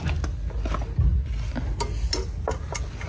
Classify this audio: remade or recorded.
recorded